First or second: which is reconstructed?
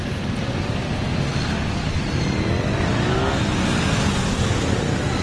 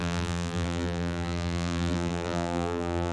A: second